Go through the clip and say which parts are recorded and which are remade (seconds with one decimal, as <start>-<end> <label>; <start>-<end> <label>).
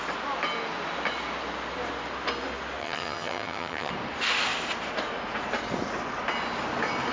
0.0-2.8 recorded; 2.8-3.9 remade; 3.9-7.1 recorded